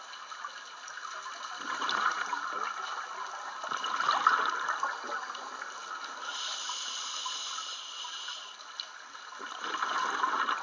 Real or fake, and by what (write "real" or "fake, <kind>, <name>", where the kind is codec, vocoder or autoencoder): real